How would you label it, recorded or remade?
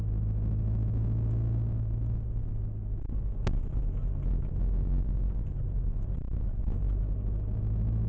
recorded